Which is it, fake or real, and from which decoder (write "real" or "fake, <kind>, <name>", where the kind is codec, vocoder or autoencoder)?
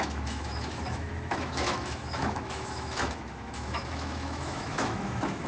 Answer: fake, autoencoder, DAC-VAE